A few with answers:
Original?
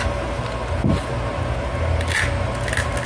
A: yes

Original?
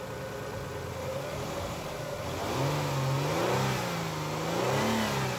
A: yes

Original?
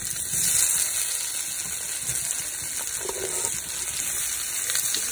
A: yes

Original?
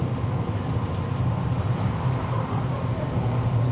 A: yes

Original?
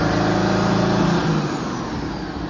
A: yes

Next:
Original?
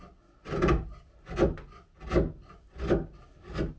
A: yes